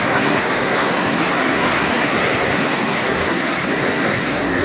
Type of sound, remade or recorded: remade